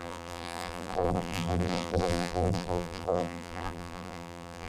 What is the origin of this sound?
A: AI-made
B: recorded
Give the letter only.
A